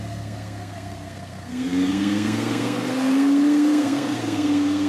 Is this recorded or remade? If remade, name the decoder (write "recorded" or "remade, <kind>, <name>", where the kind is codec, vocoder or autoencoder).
remade, codec, SNAC